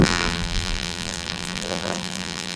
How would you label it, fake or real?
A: fake